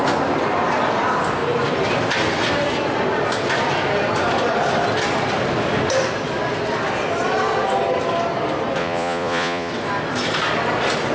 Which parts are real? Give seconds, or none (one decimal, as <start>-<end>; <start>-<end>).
0.0-8.8; 9.7-11.1